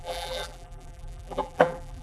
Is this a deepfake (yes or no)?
yes